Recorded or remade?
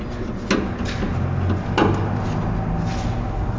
recorded